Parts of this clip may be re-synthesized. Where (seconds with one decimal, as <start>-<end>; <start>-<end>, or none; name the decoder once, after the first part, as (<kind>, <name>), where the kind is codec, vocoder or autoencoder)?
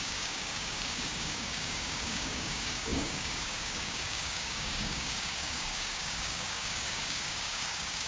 0.0-8.1 (codec, DAC)